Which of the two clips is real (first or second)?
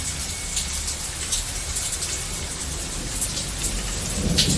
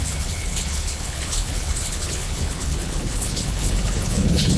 first